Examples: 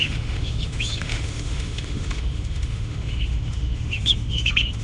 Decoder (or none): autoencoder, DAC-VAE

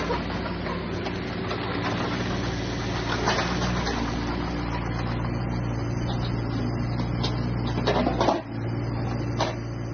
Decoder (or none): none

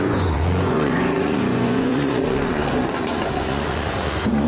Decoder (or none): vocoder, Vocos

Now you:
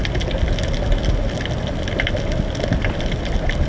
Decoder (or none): none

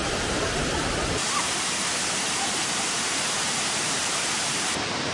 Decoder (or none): vocoder, BigVGAN v2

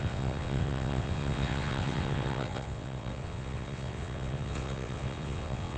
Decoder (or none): vocoder, WaveNeXt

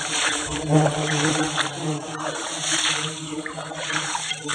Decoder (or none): vocoder, BigVGAN v2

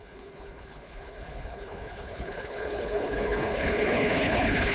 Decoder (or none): codec, HILCodec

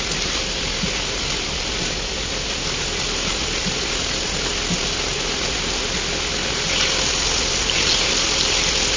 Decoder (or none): none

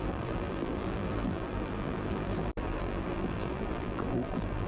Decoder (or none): vocoder, BigVGAN v2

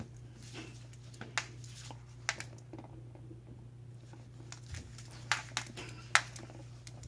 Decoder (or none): none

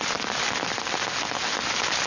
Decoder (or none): none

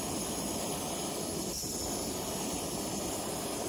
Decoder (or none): none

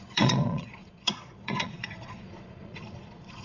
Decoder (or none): vocoder, Vocos